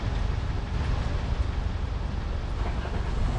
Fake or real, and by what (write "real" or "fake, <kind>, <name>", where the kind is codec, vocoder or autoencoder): real